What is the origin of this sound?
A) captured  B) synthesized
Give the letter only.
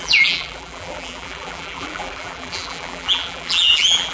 B